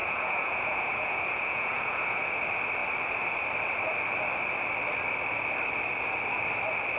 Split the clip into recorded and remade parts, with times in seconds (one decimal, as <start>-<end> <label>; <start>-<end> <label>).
0.0-2.4 remade; 2.4-7.0 recorded